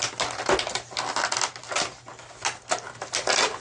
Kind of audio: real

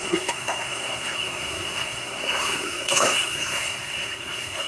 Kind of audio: fake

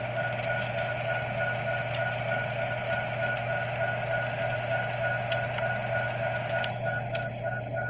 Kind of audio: real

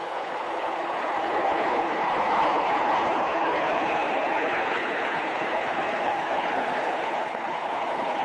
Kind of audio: fake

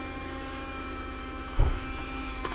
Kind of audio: fake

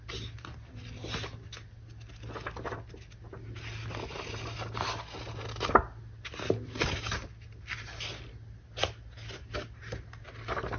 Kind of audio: real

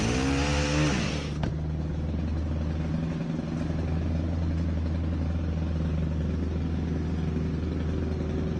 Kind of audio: real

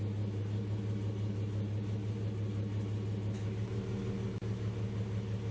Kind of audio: real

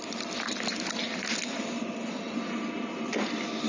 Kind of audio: real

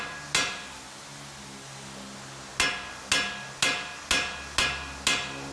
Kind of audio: real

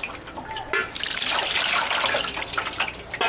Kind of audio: real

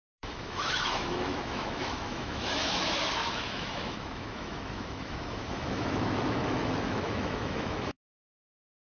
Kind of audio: fake